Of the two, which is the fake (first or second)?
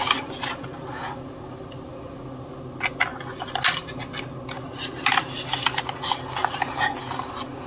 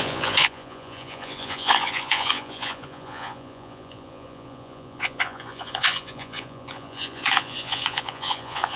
second